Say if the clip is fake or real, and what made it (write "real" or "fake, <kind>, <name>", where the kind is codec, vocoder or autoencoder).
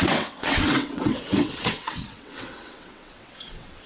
fake, vocoder, WaveNeXt